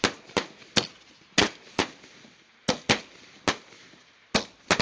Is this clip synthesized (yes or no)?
no